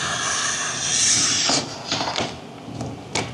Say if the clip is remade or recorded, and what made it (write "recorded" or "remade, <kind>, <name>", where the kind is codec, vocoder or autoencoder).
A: recorded